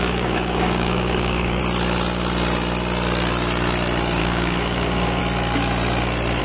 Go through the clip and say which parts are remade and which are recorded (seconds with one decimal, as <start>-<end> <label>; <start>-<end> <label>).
0.0-1.6 remade; 1.6-4.2 recorded; 4.2-5.2 remade; 5.2-6.4 recorded